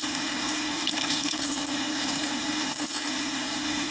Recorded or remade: remade